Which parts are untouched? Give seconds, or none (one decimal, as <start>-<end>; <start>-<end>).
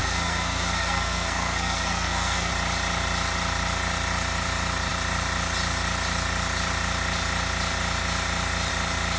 2.5-9.2